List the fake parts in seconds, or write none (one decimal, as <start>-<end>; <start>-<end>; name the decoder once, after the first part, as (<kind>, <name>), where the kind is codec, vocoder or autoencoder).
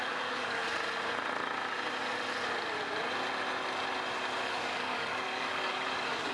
0.0-0.6 (codec, DAC); 4.4-6.3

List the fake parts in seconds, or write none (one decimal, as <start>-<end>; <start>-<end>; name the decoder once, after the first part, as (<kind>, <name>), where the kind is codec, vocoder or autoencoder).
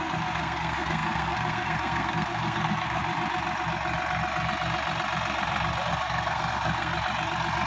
0.0-3.0 (codec, SNAC); 5.9-6.9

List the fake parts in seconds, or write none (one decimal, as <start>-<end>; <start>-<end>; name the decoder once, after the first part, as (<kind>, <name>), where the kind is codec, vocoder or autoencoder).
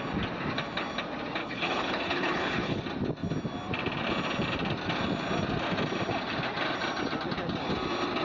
1.4-2.8 (codec, HILCodec)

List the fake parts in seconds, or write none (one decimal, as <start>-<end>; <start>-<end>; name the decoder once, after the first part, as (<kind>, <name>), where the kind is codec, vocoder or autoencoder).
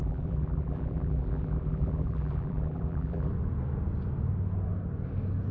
0.0-3.3 (vocoder, BigVGAN v2)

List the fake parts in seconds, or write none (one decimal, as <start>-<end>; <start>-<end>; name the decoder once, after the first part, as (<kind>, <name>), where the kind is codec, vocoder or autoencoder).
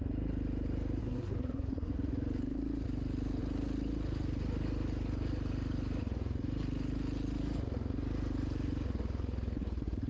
1.0-1.9 (codec, SNAC)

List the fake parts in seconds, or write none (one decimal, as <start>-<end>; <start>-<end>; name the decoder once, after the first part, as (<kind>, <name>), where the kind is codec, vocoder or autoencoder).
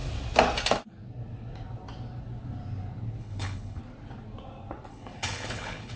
3.2-3.8 (codec, HILCodec); 4.9-6.0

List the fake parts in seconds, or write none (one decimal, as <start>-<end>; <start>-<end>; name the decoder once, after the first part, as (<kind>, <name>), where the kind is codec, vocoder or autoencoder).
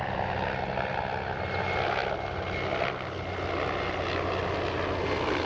none